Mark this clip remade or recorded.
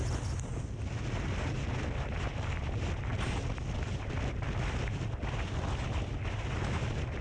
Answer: recorded